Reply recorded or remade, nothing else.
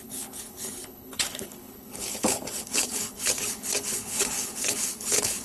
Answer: remade